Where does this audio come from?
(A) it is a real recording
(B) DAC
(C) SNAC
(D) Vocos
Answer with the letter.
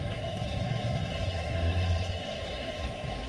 C